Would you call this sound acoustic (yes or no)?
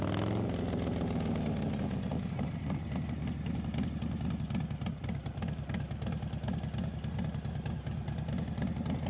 yes